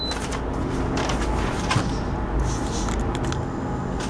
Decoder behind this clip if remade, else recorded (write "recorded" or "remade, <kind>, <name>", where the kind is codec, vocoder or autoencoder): recorded